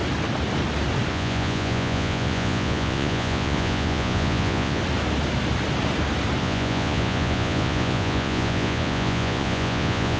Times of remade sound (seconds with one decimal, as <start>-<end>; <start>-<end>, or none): 1.1-4.8; 6.4-10.2